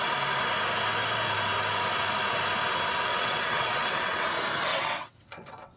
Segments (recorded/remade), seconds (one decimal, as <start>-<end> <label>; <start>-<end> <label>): 0.0-3.1 recorded; 3.1-4.2 remade; 4.2-4.7 recorded; 4.7-5.8 remade